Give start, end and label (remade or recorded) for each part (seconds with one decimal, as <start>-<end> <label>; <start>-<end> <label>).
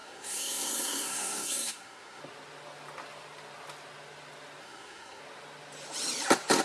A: 0.0-2.2 remade; 2.2-4.6 recorded; 4.6-5.2 remade; 5.2-6.6 recorded